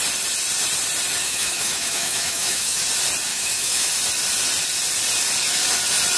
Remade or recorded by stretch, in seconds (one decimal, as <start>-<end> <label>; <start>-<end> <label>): 0.0-1.2 recorded; 1.2-2.8 remade; 2.8-3.3 recorded; 3.3-3.9 remade; 3.9-6.2 recorded